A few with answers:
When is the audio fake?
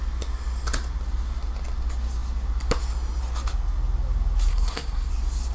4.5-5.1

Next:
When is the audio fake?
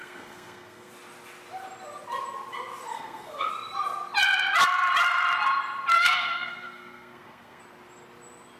0.0-0.9; 2.9-3.5; 5.9-7.6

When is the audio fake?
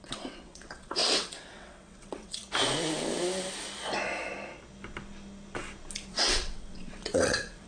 0.0-2.4; 6.1-7.7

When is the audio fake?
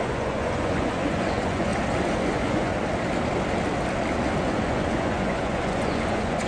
0.0-1.7; 2.2-2.7; 4.4-6.5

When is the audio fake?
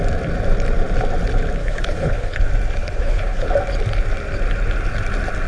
1.6-2.4; 2.8-3.5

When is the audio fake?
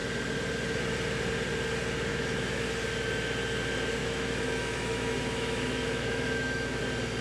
2.1-2.7; 4.0-6.8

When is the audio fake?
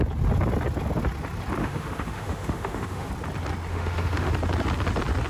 1.6-3.1; 3.7-4.3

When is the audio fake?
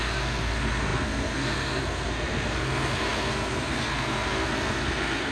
0.0-5.3